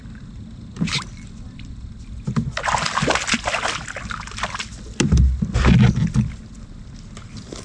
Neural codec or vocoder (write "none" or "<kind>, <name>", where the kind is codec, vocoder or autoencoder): none